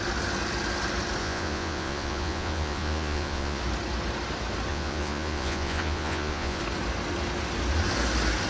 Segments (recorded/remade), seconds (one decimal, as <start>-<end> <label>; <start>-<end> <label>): 0.0-1.2 recorded; 1.2-3.6 remade; 3.6-4.7 recorded; 4.7-6.6 remade; 6.6-8.5 recorded

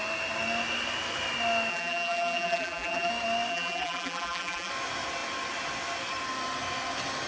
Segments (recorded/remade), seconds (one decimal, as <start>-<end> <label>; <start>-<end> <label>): 0.0-1.7 recorded; 1.7-3.1 remade; 3.1-3.5 recorded; 3.5-4.7 remade; 4.7-7.3 recorded

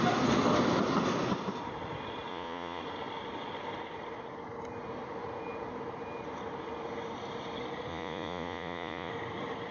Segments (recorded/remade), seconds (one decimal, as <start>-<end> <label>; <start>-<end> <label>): 0.0-2.3 recorded; 2.3-2.8 remade; 2.8-7.9 recorded; 7.9-9.1 remade; 9.1-9.7 recorded

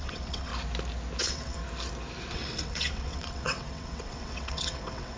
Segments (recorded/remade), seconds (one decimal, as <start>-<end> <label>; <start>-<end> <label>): 0.0-0.5 remade; 0.5-1.2 recorded; 1.2-1.6 remade; 1.6-2.3 recorded; 2.3-5.2 remade

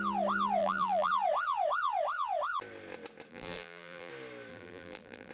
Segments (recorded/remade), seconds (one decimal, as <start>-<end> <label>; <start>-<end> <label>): 0.0-0.6 recorded; 0.6-1.1 remade; 1.1-3.3 recorded; 3.3-4.1 remade; 4.1-4.5 recorded; 4.5-5.3 remade

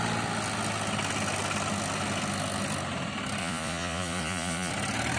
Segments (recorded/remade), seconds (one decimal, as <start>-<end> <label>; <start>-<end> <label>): 0.0-3.4 recorded; 3.4-4.7 remade; 4.7-5.2 recorded

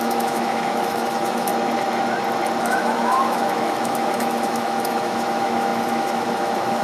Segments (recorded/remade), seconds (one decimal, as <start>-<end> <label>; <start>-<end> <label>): 0.0-1.5 remade; 1.5-2.6 recorded; 2.6-6.8 remade

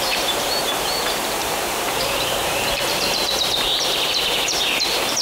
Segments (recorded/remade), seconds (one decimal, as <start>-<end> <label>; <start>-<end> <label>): 0.0-5.2 remade